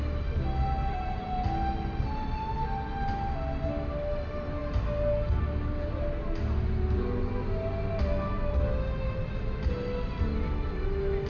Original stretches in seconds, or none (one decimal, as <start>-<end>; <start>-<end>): 0.0-11.3